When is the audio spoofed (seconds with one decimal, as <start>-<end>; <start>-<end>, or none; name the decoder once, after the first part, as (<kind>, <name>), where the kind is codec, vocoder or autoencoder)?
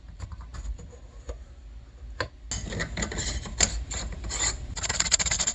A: 0.0-0.5 (vocoder, BigVGAN v2); 3.2-5.5